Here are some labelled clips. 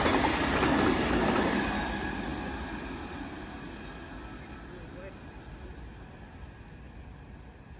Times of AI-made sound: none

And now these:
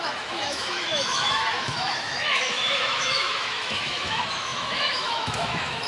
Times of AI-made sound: 0.0-5.9 (autoencoder, DAC-VAE)

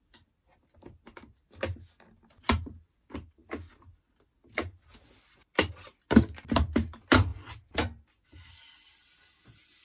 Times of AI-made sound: none

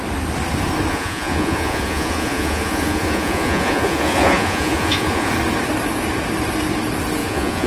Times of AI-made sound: 0.9-5.3 (vocoder, Vocos); 7.2-7.7

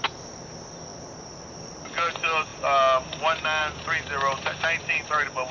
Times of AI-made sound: none

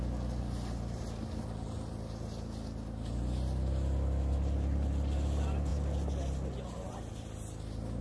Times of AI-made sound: none

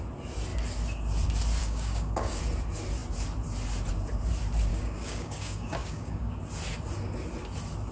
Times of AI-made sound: 1.6-2.4 (codec, DAC); 4.7-6.4

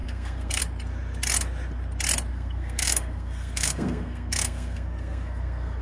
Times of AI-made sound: 0.0-0.6 (codec, SNAC); 2.3-5.8